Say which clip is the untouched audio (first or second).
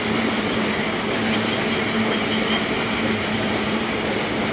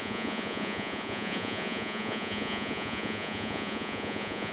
first